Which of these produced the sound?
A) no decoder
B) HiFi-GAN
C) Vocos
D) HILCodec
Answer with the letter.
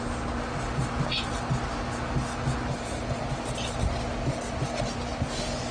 A